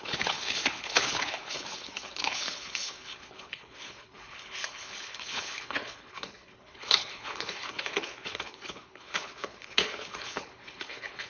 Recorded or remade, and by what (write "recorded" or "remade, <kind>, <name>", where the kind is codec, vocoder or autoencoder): remade, codec, HILCodec